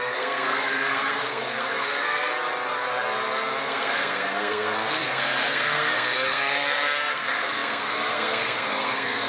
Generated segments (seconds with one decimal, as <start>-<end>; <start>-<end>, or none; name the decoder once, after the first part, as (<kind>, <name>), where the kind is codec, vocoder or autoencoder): 0.0-2.3 (codec, SNAC); 3.6-9.3